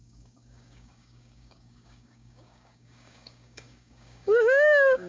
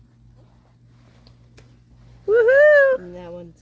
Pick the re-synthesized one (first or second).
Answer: first